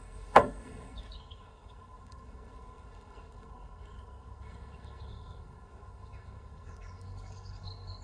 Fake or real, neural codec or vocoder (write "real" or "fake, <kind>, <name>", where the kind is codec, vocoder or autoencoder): fake, codec, SNAC